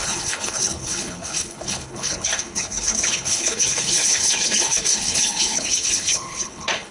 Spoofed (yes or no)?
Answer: yes